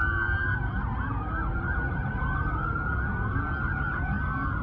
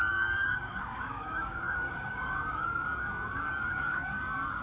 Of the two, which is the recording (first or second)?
first